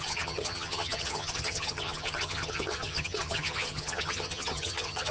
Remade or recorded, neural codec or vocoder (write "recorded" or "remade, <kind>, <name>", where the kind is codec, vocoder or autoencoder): remade, vocoder, HiFi-GAN